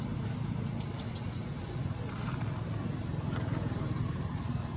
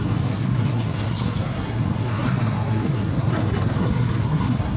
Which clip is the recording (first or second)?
first